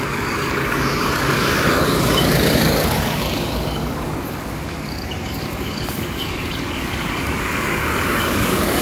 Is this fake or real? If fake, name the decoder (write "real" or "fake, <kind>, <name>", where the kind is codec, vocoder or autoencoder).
fake, codec, DAC